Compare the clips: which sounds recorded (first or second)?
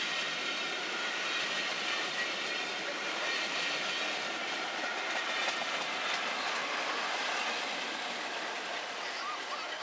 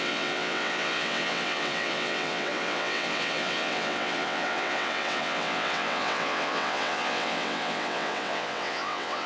first